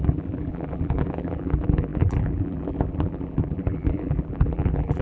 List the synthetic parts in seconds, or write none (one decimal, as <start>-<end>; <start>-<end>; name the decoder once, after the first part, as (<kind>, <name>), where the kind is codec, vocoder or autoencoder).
0.0-5.0 (vocoder, BigVGAN v2)